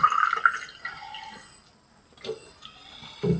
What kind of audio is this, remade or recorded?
recorded